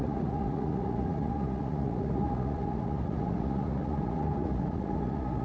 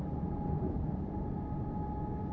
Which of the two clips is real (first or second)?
second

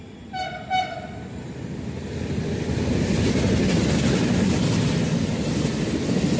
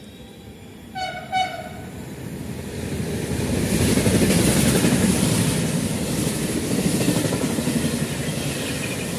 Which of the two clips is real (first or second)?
first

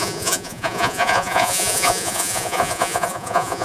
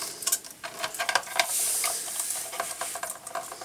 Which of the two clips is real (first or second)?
second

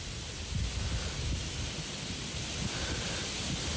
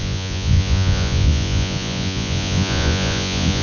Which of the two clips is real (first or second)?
first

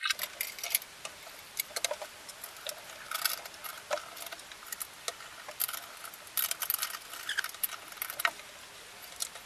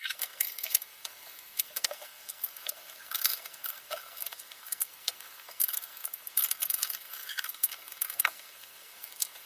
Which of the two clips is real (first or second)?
first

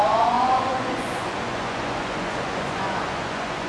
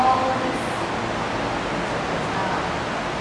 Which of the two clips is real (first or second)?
second